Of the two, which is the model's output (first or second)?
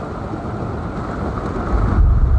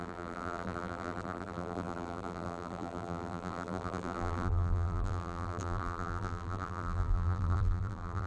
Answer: second